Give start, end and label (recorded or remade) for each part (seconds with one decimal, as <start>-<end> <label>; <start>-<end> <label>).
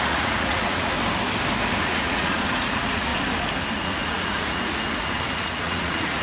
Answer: 0.0-0.9 remade; 0.9-1.8 recorded; 1.8-3.1 remade; 3.1-3.8 recorded; 3.8-6.2 remade